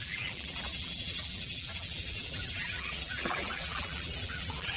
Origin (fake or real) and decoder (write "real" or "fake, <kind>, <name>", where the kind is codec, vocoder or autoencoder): fake, vocoder, BigVGAN v2